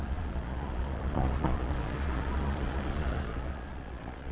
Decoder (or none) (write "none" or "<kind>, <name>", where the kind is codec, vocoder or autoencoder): vocoder, Vocos